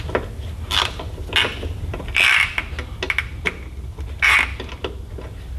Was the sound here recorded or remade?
recorded